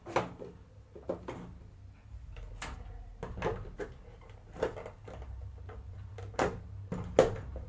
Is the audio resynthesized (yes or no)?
no